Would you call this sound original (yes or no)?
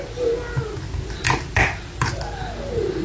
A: yes